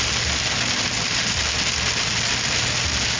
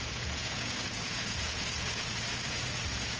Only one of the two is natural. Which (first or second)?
first